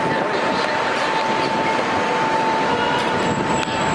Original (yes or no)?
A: yes